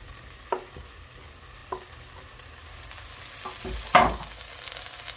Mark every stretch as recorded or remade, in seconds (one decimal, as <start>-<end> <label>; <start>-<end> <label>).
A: 0.0-5.2 recorded

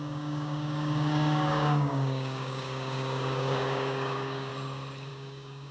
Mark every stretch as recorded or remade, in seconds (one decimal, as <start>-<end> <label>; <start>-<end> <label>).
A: 0.0-4.5 remade; 4.5-5.1 recorded; 5.1-5.7 remade

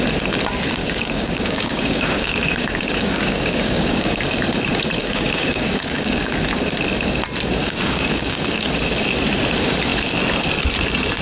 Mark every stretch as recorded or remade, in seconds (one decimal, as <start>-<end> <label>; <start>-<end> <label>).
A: 0.0-0.8 recorded; 0.8-4.2 remade; 4.2-5.0 recorded; 5.0-6.3 remade; 6.3-7.6 recorded; 7.6-8.7 remade; 8.7-11.2 recorded

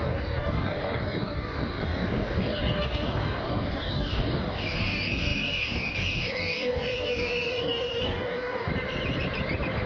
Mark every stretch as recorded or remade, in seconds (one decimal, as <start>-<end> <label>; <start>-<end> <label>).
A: 0.0-8.7 remade; 8.7-9.9 recorded

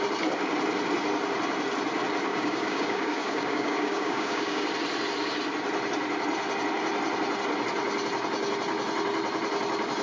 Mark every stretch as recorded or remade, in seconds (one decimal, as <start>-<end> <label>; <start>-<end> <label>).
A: 0.0-2.3 recorded; 2.3-4.7 remade; 4.7-10.0 recorded

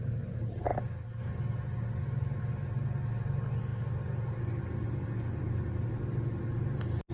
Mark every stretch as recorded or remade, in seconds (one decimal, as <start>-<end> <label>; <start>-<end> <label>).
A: 0.0-7.1 recorded

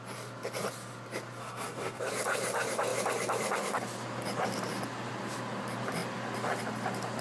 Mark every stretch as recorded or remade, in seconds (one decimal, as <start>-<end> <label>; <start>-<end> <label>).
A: 0.0-1.4 recorded; 1.4-2.0 remade; 2.0-7.2 recorded